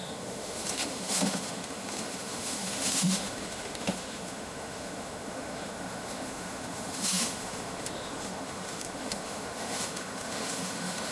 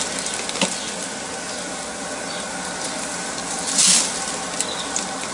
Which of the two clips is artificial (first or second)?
first